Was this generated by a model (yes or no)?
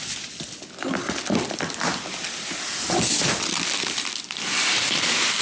no